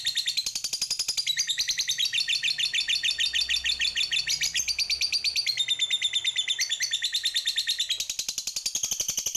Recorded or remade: recorded